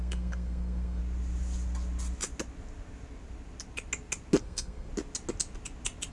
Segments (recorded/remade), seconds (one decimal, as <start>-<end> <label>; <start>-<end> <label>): 0.0-1.0 remade; 1.0-4.4 recorded; 4.4-4.9 remade; 4.9-6.1 recorded